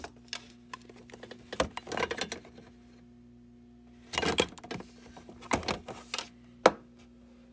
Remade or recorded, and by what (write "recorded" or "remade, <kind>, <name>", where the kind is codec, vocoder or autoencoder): recorded